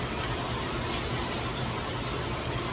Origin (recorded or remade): recorded